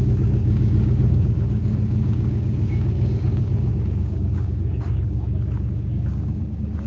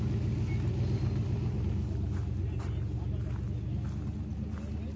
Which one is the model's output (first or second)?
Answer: first